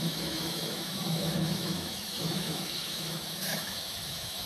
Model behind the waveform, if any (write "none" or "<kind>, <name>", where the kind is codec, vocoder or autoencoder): autoencoder, DAC-VAE